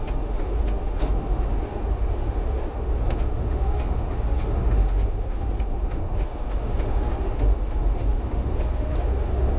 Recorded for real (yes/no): no